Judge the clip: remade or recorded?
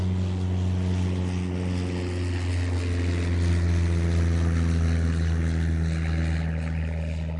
recorded